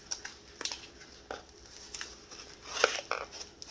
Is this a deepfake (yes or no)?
no